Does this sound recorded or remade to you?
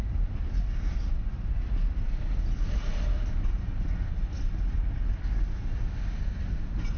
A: recorded